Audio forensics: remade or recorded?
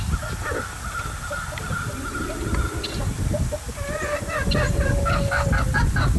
recorded